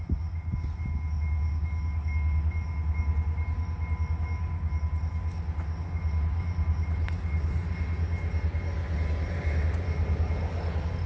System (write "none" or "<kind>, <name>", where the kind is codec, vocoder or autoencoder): none